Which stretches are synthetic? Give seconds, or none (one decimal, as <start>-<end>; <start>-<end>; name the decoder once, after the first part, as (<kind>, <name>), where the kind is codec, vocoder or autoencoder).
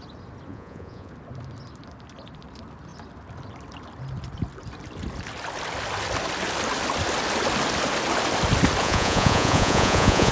0.5-1.1 (vocoder, Vocos); 8.8-10.3